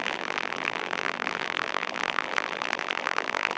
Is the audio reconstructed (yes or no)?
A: yes